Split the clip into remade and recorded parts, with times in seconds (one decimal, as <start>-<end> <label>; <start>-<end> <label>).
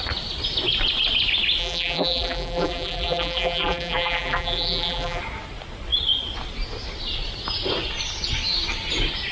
0.0-1.6 recorded; 1.6-5.2 remade; 5.2-9.3 recorded